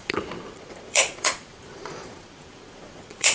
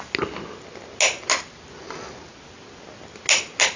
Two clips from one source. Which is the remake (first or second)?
first